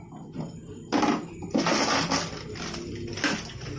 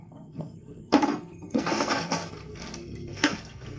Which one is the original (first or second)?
first